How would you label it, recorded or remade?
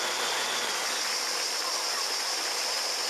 remade